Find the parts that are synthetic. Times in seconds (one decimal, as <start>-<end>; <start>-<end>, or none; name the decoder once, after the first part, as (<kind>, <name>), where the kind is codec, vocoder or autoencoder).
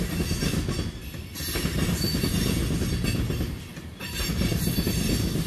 1.7-2.6 (vocoder, BigVGAN v2); 3.7-4.3